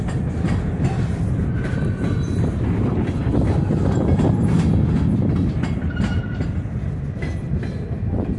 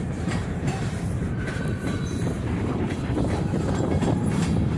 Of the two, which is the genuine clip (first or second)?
first